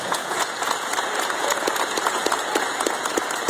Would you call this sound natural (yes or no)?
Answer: no